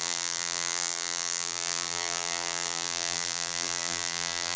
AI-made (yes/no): yes